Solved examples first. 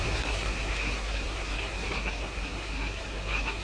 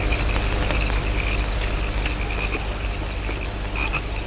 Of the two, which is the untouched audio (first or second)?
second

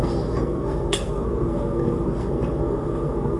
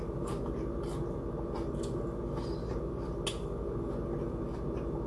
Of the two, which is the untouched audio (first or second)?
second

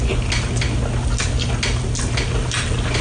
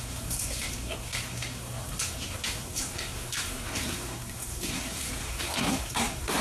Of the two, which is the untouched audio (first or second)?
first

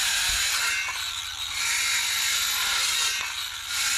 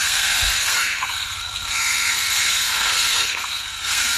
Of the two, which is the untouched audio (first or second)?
first